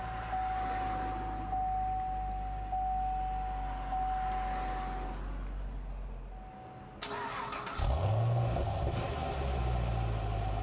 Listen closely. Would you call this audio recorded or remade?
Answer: recorded